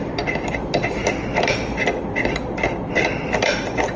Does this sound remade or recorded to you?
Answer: recorded